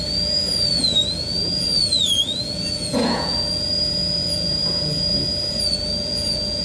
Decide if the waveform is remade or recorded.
remade